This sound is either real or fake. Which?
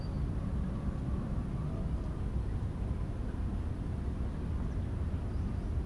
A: real